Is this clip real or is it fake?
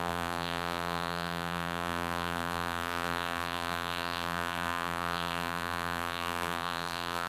fake